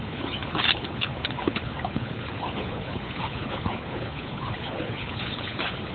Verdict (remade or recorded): remade